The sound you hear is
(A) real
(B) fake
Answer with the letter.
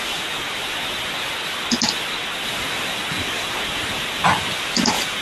A